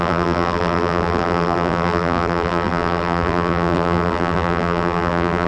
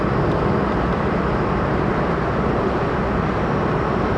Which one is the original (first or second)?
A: second